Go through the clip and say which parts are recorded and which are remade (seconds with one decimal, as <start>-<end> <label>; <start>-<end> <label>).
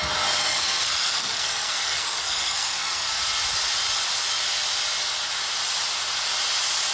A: 0.0-0.4 recorded; 0.4-3.2 remade; 3.2-6.9 recorded